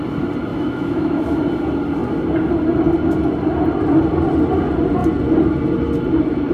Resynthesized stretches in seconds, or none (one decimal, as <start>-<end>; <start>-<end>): 0.5-1.5